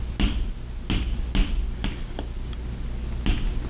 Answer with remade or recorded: recorded